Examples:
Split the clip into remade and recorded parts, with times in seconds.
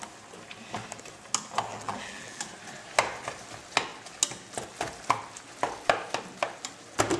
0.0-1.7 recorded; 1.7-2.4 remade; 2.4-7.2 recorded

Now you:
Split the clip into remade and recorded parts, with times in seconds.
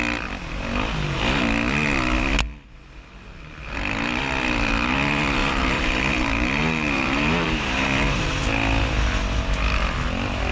0.0-5.4 recorded; 5.4-8.4 remade; 8.4-10.5 recorded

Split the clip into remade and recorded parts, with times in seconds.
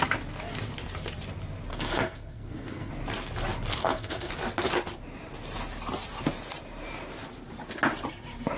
0.0-1.7 recorded; 1.7-2.9 remade; 2.9-3.8 recorded; 3.8-4.3 remade; 4.3-8.6 recorded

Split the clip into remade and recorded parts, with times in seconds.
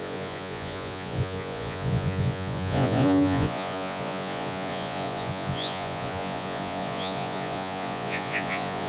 0.0-8.9 remade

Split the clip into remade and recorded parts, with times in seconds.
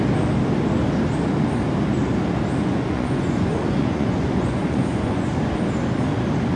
0.0-2.6 recorded; 2.6-5.3 remade; 5.3-6.6 recorded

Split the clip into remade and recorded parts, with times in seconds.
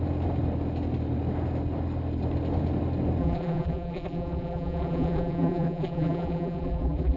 0.0-3.2 recorded; 3.2-7.2 remade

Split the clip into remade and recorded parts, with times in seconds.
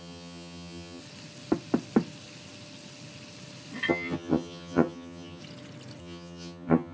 0.0-1.0 remade; 1.0-3.9 recorded; 3.9-5.4 remade; 5.4-6.0 recorded; 6.0-6.9 remade